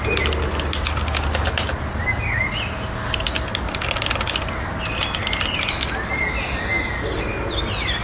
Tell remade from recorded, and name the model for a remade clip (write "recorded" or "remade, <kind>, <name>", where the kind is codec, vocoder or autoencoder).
recorded